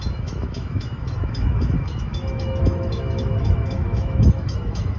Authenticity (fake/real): fake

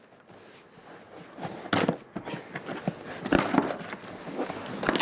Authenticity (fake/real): real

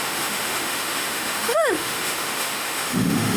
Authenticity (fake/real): fake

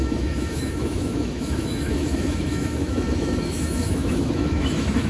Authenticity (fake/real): fake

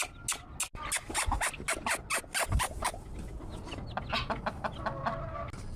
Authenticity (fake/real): real